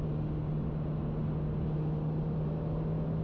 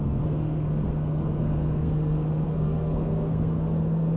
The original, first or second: first